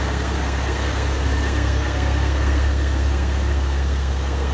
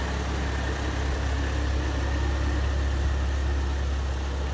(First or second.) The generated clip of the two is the first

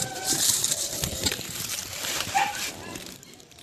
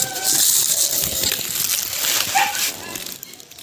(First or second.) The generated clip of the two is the first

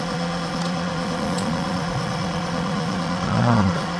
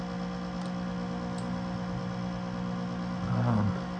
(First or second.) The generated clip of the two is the first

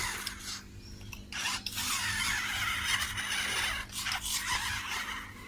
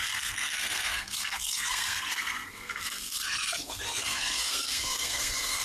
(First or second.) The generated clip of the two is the second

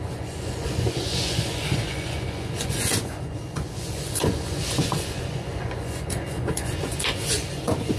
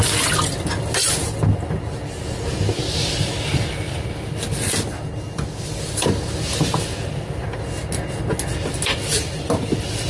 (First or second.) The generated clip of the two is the first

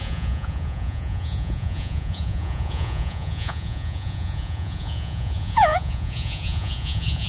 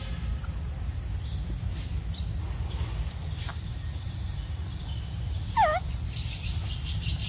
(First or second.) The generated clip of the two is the first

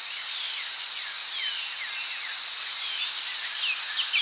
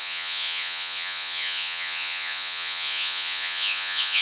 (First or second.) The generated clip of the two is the second